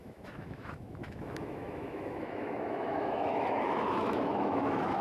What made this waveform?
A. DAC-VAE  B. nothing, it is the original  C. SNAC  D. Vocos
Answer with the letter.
A